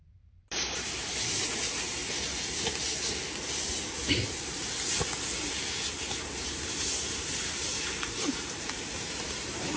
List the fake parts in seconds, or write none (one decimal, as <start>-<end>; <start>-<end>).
0.0-2.0; 6.1-9.8